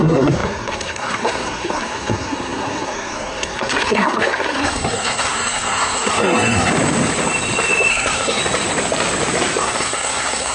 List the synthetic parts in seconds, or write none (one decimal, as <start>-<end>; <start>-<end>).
0.0-6.7; 7.9-8.4; 9.6-10.5